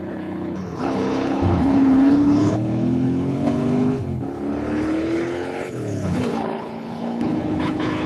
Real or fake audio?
fake